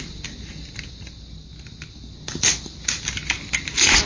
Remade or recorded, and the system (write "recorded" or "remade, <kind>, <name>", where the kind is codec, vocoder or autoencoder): recorded